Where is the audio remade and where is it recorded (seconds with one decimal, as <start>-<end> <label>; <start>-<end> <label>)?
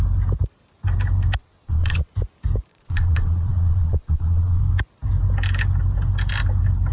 0.0-1.4 recorded; 1.4-2.1 remade; 2.1-2.7 recorded; 2.7-4.6 remade; 4.6-6.9 recorded